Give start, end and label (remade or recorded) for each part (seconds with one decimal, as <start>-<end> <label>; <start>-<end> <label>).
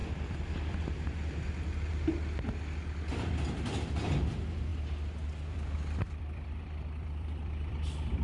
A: 0.0-1.9 remade; 1.9-3.1 recorded; 3.1-4.7 remade; 4.7-5.5 recorded; 5.5-8.2 remade